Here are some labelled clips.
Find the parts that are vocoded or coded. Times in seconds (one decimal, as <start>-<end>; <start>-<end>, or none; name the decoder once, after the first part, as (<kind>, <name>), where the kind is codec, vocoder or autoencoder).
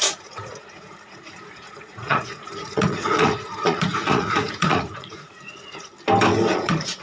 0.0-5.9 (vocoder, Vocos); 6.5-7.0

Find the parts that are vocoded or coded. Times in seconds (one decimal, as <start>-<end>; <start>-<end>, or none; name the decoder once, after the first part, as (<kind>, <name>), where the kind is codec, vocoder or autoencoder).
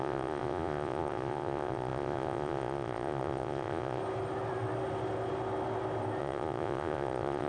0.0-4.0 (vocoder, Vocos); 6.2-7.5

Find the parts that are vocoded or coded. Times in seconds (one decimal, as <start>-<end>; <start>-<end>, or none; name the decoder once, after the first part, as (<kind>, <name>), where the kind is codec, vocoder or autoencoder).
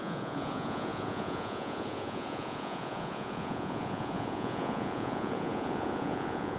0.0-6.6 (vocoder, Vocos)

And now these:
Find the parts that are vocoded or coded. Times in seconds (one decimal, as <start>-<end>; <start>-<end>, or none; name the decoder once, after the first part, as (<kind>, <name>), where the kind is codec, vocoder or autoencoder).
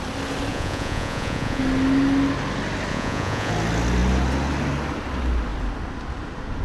0.5-1.6 (vocoder, Vocos); 2.9-3.5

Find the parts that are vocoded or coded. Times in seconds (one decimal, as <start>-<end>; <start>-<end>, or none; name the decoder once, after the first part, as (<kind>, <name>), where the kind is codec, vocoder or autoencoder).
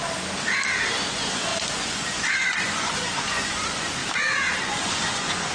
1.1-4.0 (vocoder, Vocos); 4.6-5.5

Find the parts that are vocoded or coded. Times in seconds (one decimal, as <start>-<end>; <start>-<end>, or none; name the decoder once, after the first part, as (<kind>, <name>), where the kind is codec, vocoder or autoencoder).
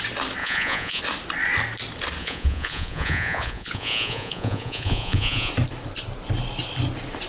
0.4-1.0 (vocoder, Vocos); 2.2-5.5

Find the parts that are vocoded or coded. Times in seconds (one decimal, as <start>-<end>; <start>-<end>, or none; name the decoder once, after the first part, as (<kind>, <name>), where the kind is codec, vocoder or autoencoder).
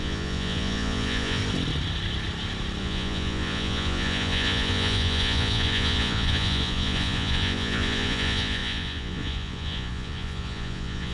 0.0-1.4 (vocoder, Vocos); 2.8-11.1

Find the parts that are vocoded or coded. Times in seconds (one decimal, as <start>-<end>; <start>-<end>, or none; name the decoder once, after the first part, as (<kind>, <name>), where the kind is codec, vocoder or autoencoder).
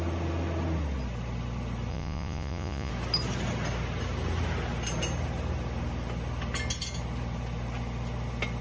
1.9-2.9 (vocoder, Vocos)